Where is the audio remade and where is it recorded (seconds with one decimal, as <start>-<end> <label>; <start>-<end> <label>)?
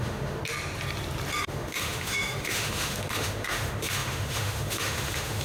0.0-0.4 remade; 0.4-1.3 recorded; 1.3-5.4 remade